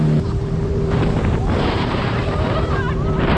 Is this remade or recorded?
remade